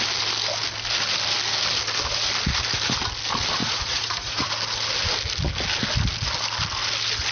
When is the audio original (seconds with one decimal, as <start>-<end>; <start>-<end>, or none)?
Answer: 0.0-3.6; 4.5-7.3